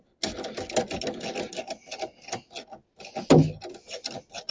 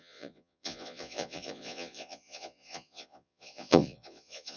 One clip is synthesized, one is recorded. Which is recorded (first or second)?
first